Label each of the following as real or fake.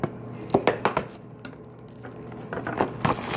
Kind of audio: real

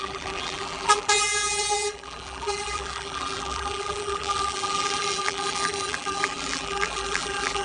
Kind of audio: fake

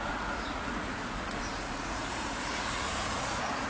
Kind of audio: fake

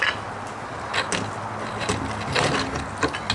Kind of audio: real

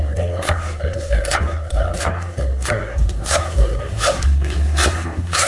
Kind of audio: fake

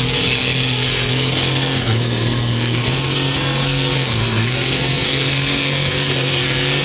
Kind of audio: fake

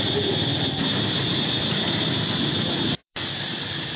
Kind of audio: fake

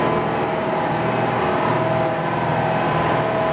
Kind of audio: real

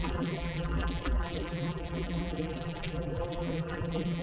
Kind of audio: fake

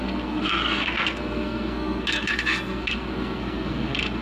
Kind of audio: fake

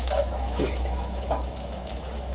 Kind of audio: fake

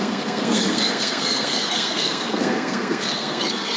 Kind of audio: fake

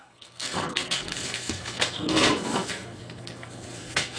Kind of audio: fake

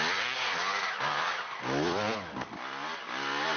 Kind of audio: real